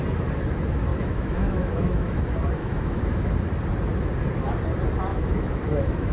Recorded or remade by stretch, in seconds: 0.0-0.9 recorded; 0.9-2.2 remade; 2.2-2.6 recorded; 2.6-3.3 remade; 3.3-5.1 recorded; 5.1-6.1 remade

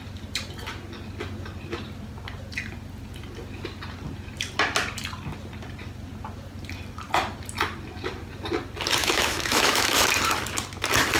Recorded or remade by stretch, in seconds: 0.0-9.0 recorded; 9.0-10.1 remade; 10.1-11.2 recorded

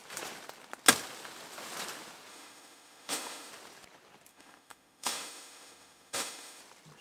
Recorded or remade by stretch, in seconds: 0.0-2.3 recorded; 2.3-3.5 remade; 3.5-4.3 recorded; 4.3-6.6 remade; 6.6-7.0 recorded

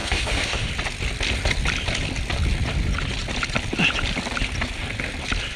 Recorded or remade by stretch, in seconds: 0.0-0.7 remade; 0.7-5.6 recorded